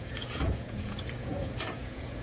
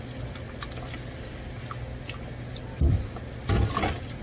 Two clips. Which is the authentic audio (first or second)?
second